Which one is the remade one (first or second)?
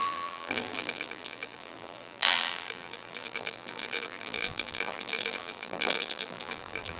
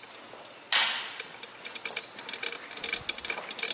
first